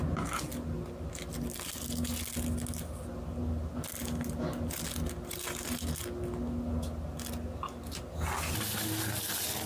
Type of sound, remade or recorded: recorded